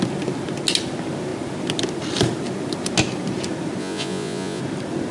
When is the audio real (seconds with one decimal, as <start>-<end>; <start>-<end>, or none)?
0.0-3.8; 4.6-5.1